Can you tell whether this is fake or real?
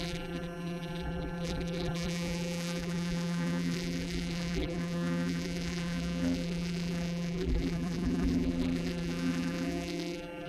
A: fake